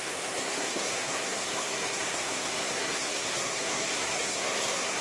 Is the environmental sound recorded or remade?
remade